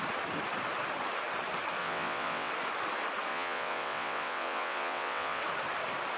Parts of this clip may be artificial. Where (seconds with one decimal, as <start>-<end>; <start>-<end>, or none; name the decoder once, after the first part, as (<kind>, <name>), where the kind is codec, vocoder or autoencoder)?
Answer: 1.8-2.5 (vocoder, WaveNeXt); 3.3-5.4